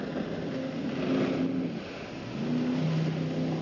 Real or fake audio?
real